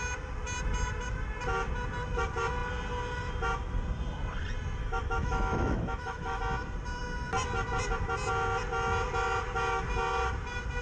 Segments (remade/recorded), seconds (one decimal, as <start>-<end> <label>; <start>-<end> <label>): 0.0-4.8 recorded; 4.8-6.4 remade; 6.4-10.8 recorded

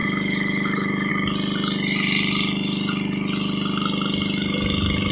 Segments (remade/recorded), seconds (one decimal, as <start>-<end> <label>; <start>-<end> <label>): 0.0-1.1 remade; 1.1-5.1 recorded

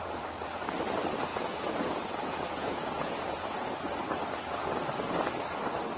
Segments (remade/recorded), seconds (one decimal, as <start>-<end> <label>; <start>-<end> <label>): 0.0-1.3 recorded; 1.3-3.7 remade; 3.7-6.0 recorded

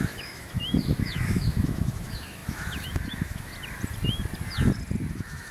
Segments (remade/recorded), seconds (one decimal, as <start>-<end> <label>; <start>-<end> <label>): 0.0-3.5 remade; 3.5-5.1 recorded; 5.1-5.5 remade

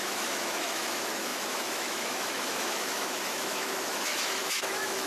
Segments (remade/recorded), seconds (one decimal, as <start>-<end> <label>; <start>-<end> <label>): 0.0-5.1 remade